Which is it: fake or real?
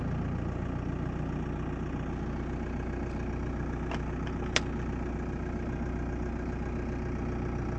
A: real